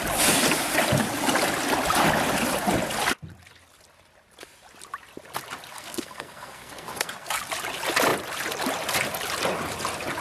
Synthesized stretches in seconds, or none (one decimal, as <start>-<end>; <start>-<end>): 5.7-7.4